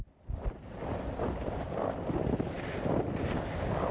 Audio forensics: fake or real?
real